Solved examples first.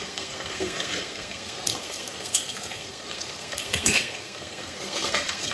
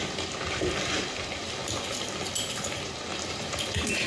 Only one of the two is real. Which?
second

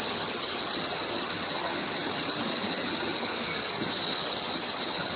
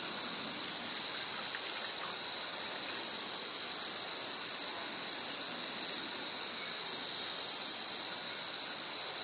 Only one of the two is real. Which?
second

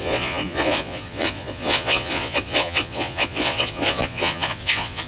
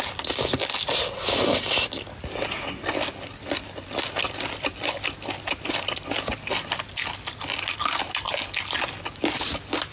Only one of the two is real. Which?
second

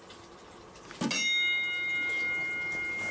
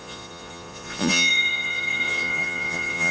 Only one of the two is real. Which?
first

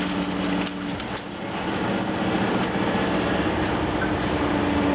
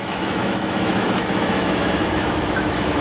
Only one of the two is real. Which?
first